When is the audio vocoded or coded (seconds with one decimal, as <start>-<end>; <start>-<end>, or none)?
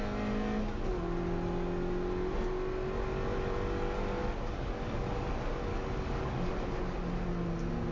4.2-5.1; 5.7-6.5